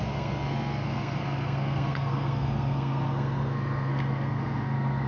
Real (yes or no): no